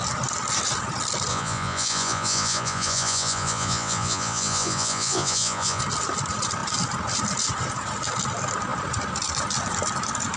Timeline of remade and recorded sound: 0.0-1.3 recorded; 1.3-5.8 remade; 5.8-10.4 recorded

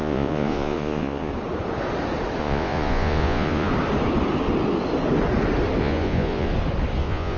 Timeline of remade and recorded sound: 0.0-1.3 remade; 1.3-2.4 recorded; 2.4-3.7 remade; 3.7-5.8 recorded; 5.8-6.5 remade; 6.5-7.0 recorded; 7.0-7.4 remade

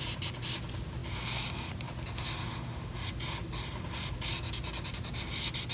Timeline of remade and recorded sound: 0.0-5.7 recorded

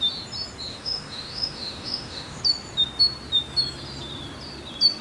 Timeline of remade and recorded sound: 0.0-0.7 recorded; 0.7-2.4 remade; 2.4-5.0 recorded

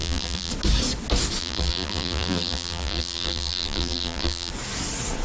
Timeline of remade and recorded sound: 0.0-0.5 remade; 0.5-1.4 recorded; 1.4-4.5 remade; 4.5-5.2 recorded